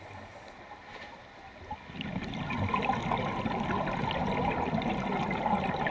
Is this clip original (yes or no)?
yes